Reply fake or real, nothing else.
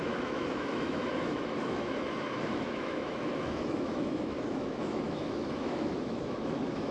fake